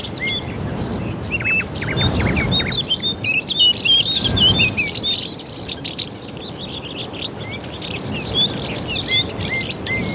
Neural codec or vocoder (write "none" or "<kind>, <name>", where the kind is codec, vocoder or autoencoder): none